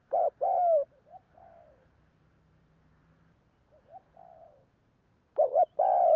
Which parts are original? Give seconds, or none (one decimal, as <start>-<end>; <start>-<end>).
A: none